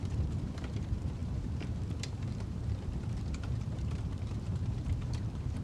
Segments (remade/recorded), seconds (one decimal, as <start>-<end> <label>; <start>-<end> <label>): 0.0-5.6 remade